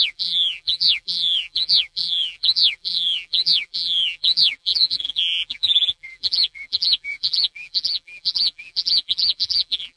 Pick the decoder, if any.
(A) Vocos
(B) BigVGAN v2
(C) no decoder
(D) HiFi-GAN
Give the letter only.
B